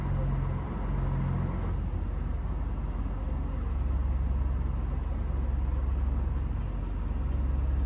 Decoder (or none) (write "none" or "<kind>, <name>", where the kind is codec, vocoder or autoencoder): none